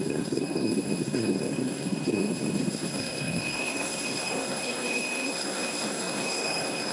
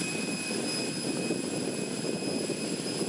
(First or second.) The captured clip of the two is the second